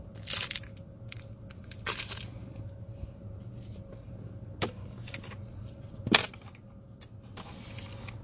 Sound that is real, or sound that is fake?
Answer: real